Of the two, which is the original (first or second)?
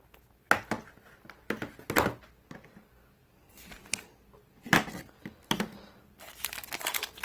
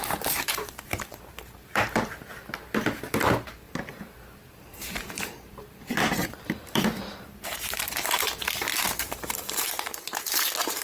first